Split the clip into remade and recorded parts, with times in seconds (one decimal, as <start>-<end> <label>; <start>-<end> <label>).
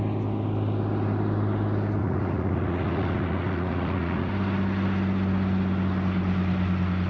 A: 0.0-2.0 recorded; 2.0-4.3 remade; 4.3-7.1 recorded